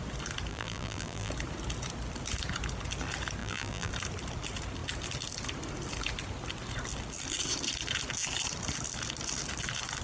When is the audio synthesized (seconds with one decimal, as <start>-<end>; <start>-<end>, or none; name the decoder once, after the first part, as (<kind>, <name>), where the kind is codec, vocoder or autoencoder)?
0.5-1.3 (vocoder, BigVGAN v2); 3.4-3.9